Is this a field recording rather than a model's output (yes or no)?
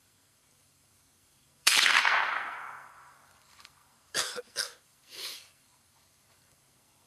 no